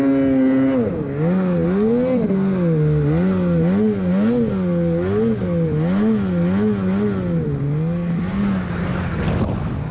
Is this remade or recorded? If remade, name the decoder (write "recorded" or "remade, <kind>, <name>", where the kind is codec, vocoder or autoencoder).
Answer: recorded